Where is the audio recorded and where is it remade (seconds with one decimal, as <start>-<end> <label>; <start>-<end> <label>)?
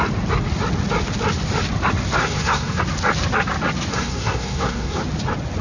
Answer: 0.0-2.2 recorded; 2.2-2.8 remade; 2.8-3.9 recorded; 3.9-5.0 remade; 5.0-5.6 recorded